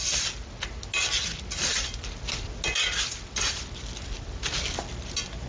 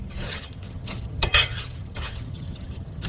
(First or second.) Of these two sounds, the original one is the first